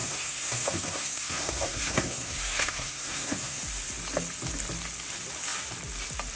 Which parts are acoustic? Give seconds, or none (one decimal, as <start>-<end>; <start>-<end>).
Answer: 3.6-6.4